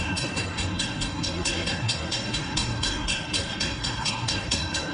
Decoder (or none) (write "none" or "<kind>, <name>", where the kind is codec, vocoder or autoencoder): codec, SNAC